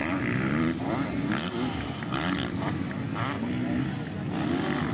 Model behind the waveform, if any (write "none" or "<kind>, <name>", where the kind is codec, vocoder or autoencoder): none